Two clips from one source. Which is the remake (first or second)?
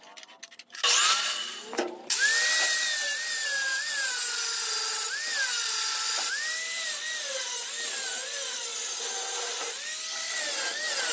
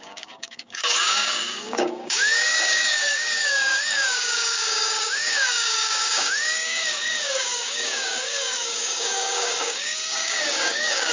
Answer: second